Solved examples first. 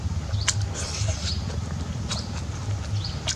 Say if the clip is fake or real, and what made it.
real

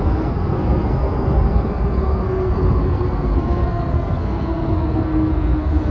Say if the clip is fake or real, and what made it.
fake, codec, SNAC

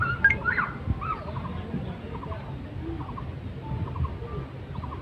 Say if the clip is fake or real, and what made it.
real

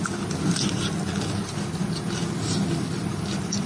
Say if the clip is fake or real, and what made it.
real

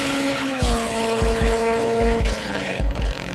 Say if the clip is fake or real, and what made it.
fake, codec, HILCodec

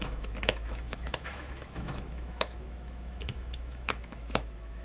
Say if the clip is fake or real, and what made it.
fake, autoencoder, DAC-VAE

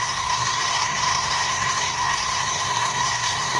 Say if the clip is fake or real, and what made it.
fake, codec, SNAC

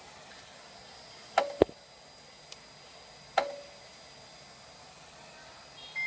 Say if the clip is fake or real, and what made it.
real